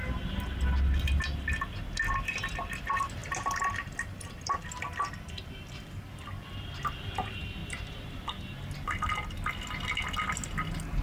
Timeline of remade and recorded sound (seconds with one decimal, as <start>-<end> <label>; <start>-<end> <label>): 0.0-3.2 recorded; 3.2-4.8 remade; 4.8-7.6 recorded; 7.6-8.3 remade; 8.3-11.0 recorded